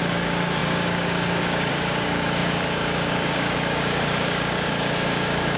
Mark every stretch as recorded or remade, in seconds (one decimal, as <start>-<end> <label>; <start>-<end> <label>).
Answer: 0.0-5.6 remade